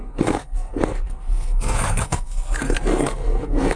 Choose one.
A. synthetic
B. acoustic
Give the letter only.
A